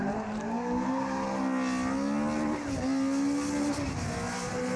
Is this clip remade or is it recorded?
recorded